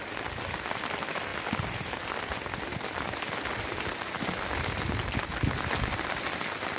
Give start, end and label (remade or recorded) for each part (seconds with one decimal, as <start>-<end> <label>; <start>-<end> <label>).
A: 0.0-6.8 recorded